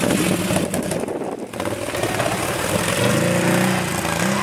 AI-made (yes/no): no